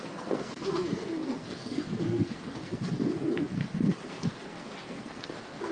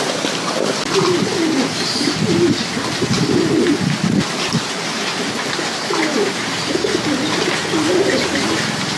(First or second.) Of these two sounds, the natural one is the second